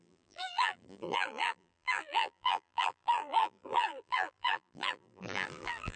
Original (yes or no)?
no